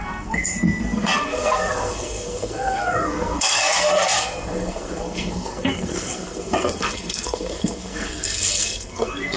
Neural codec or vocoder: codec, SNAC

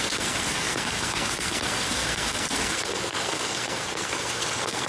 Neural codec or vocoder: codec, SNAC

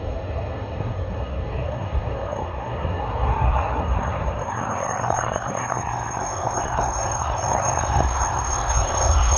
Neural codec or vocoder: codec, SNAC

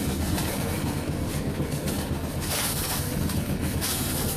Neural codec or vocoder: codec, SNAC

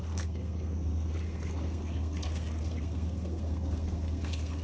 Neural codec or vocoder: codec, SNAC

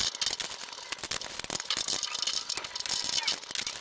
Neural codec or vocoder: none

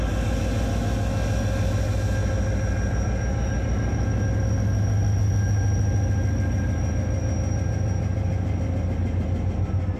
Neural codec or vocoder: none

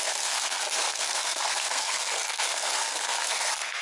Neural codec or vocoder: codec, SNAC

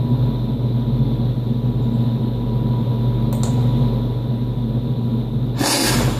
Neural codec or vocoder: none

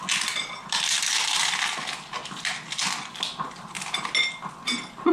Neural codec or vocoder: none